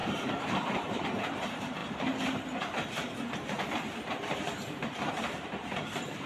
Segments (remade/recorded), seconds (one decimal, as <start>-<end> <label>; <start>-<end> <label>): 0.0-1.8 remade; 1.8-5.1 recorded; 5.1-6.3 remade